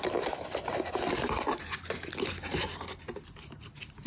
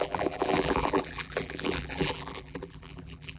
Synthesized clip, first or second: second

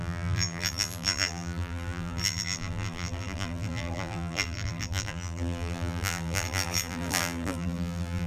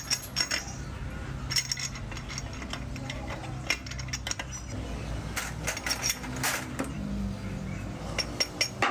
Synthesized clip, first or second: first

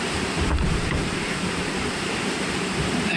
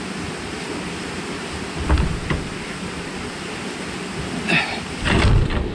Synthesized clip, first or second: first